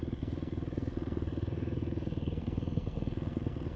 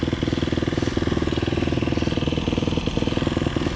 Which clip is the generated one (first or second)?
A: first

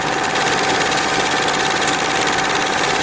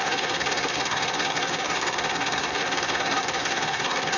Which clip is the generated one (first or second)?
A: second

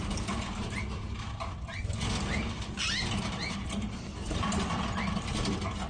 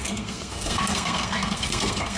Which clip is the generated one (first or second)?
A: second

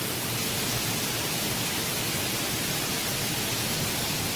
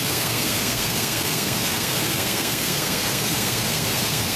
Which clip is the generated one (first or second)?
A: second